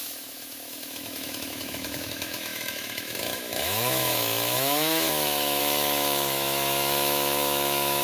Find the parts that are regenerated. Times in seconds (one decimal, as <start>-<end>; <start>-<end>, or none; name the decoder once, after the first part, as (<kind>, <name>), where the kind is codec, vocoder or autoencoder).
0.0-8.0 (autoencoder, DAC-VAE)